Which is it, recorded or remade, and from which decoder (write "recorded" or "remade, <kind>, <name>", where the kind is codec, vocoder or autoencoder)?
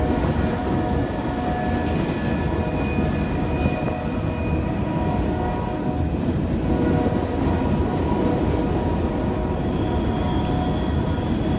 recorded